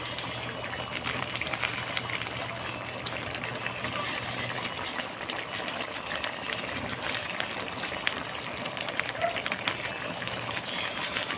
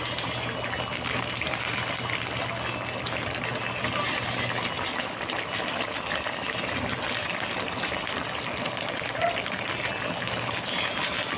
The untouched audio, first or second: second